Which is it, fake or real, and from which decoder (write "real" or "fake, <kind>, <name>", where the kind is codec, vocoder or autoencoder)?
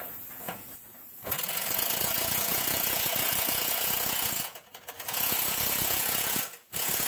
fake, vocoder, Vocos